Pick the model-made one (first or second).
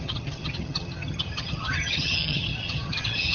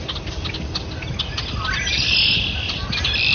first